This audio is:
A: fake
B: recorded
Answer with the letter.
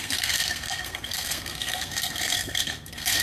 A